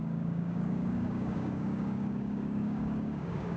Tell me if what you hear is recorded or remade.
remade